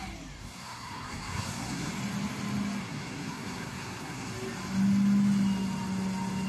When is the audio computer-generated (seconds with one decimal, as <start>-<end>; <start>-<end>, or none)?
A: 0.4-1.9; 2.8-4.3